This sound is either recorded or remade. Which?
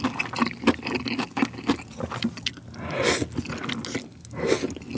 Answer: recorded